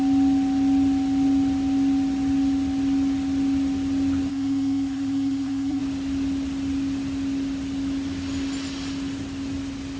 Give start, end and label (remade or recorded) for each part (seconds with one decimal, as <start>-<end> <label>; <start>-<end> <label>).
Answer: 0.0-4.3 recorded; 4.3-5.8 remade; 5.8-10.0 recorded